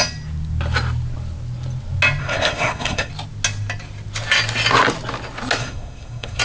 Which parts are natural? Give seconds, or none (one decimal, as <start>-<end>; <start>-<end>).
0.0-2.2; 3.1-5.6